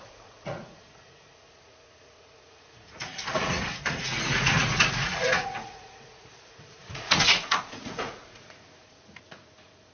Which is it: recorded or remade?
remade